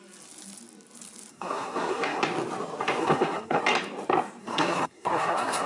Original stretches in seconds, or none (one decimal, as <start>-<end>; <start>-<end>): 0.0-1.3; 2.2-3.0; 3.6-4.4